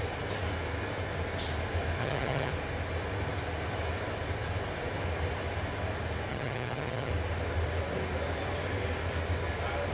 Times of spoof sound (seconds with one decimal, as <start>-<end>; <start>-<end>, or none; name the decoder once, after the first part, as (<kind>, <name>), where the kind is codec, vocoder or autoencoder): 2.0-2.5 (vocoder, HiFi-GAN); 6.3-7.1